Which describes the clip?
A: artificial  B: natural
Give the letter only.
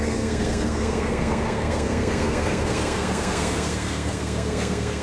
A